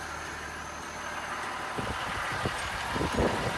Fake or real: real